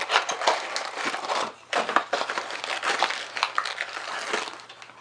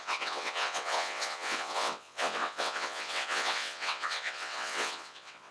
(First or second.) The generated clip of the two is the second